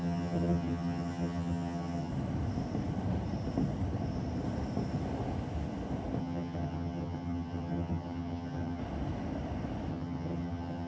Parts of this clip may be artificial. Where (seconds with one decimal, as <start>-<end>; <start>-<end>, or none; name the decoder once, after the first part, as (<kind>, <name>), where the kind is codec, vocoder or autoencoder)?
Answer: 0.0-2.1 (vocoder, HiFi-GAN); 6.2-8.8; 9.9-10.9